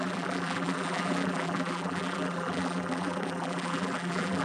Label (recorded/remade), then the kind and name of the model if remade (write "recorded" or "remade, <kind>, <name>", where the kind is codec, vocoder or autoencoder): remade, vocoder, BigVGAN v2